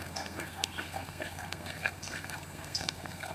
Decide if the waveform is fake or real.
fake